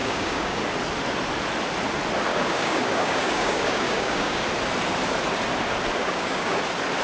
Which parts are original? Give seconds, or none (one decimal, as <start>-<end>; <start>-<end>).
0.6-2.3; 4.4-6.0; 6.6-7.0